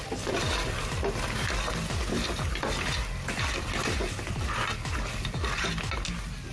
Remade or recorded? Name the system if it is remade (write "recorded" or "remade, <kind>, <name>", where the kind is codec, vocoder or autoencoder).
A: recorded